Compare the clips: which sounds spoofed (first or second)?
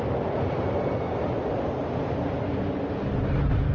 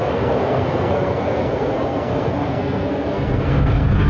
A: second